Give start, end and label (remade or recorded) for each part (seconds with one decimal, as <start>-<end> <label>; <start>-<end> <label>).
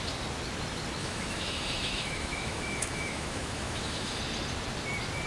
0.0-1.0 recorded; 1.0-4.2 remade; 4.2-5.3 recorded